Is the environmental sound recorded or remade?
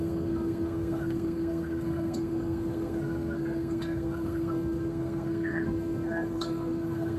remade